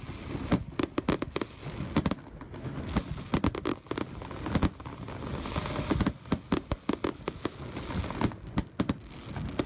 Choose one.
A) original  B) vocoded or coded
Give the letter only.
A